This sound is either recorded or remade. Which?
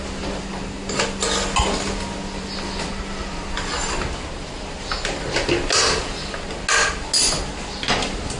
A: recorded